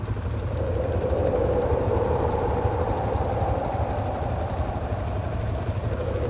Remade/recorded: recorded